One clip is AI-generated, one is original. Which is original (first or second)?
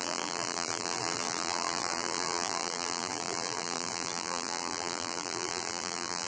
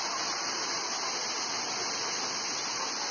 second